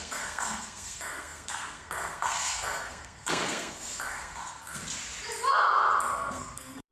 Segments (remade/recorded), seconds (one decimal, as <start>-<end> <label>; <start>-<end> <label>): 0.0-4.8 remade; 4.8-6.1 recorded; 6.1-6.9 remade